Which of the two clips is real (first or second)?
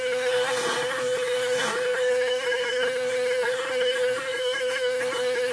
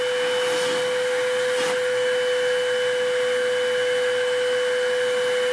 second